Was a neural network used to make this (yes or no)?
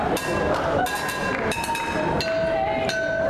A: no